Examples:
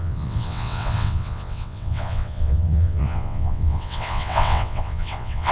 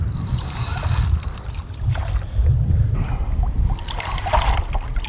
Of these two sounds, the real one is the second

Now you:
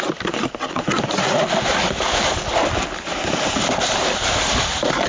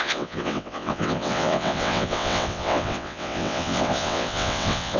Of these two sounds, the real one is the first